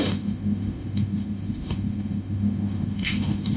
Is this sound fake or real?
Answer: fake